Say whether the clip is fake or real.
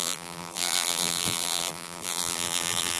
fake